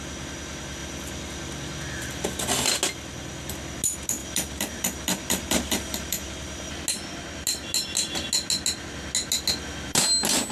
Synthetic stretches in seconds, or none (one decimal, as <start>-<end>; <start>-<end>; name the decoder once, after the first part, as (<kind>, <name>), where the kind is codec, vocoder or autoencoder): 4.2-6.8 (vocoder, BigVGAN v2)